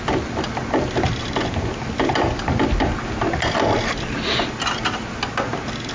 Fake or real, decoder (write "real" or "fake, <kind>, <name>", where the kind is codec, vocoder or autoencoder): real